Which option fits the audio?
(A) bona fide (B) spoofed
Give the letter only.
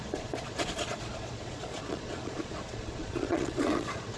B